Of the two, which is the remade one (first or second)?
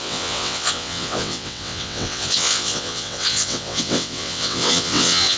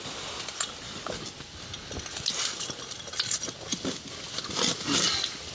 first